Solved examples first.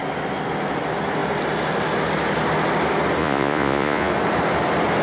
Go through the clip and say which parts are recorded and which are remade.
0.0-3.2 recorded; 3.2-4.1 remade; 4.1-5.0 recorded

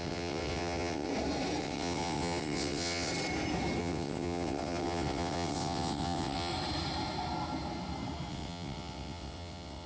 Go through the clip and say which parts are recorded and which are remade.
0.0-1.1 remade; 1.1-1.6 recorded; 1.6-3.1 remade; 3.1-3.8 recorded; 3.8-6.5 remade; 6.5-8.3 recorded; 8.3-9.9 remade

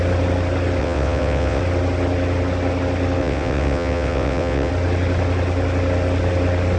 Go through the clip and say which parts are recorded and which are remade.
0.0-0.8 recorded; 0.8-1.6 remade; 1.6-3.2 recorded; 3.2-4.7 remade; 4.7-6.8 recorded

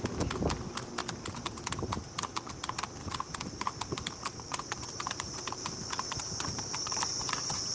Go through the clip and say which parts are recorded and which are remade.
0.0-1.0 recorded; 1.0-2.3 remade; 2.3-3.0 recorded; 3.0-7.7 remade

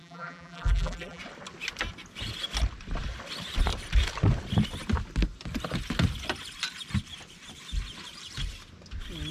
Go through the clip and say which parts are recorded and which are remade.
0.0-1.2 remade; 1.2-9.3 recorded

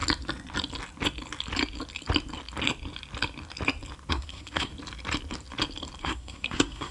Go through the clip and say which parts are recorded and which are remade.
0.0-4.1 recorded; 4.1-4.7 remade; 4.7-6.0 recorded; 6.0-6.9 remade

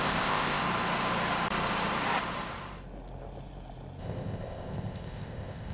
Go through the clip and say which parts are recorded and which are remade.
0.0-0.6 remade; 0.6-4.0 recorded; 4.0-5.7 remade

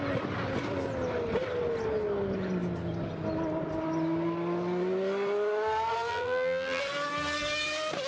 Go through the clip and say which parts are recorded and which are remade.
0.0-6.1 recorded; 6.1-6.8 remade; 6.8-8.1 recorded